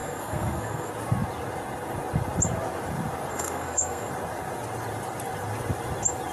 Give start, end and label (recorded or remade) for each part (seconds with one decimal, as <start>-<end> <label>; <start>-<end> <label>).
0.0-0.9 remade; 0.9-3.3 recorded; 3.3-4.1 remade; 4.1-6.3 recorded